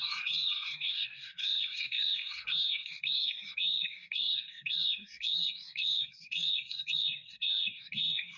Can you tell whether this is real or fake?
fake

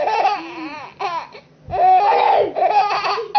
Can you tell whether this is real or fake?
real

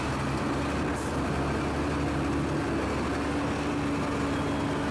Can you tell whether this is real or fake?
real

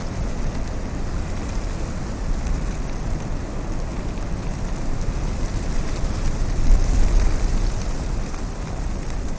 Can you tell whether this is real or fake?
real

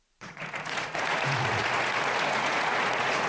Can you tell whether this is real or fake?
fake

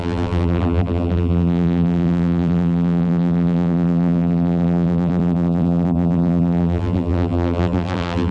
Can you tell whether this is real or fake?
fake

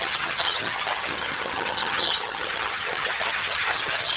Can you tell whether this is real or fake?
fake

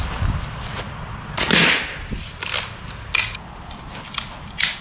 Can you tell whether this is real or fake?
real